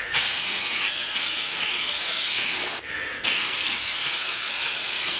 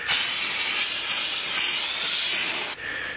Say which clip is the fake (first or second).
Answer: first